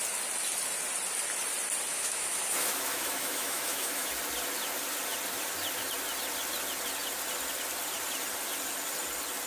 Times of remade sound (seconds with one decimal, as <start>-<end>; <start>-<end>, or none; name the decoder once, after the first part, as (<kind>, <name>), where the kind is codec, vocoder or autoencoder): 1.9-4.1 (autoencoder, DAC-VAE)